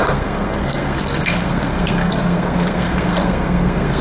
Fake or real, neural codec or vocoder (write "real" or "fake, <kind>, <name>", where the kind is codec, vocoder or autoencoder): fake, codec, SNAC